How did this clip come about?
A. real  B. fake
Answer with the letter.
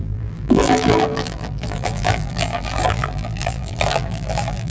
B